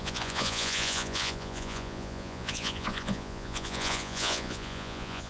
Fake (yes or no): yes